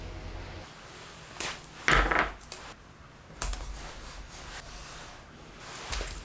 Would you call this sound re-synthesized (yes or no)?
no